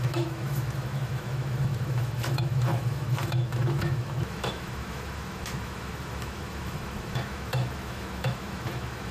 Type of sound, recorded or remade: remade